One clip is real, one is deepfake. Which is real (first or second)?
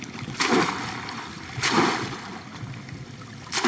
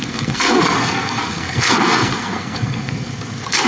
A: first